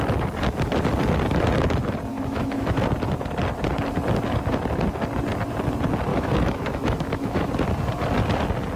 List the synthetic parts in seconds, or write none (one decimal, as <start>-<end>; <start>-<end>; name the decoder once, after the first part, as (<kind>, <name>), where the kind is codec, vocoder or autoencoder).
2.1-2.8 (autoencoder, DAC-VAE); 6.1-7.5

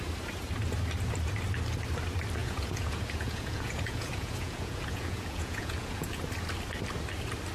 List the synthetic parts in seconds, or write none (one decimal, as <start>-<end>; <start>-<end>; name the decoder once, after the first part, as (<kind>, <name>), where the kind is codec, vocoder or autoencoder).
2.4-6.2 (vocoder, Vocos)

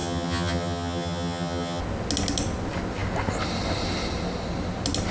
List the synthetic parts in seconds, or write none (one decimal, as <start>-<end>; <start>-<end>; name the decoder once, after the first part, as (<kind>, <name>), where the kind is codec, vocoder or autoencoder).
0.0-1.8 (vocoder, HiFi-GAN)